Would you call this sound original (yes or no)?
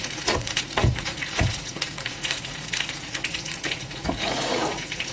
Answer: no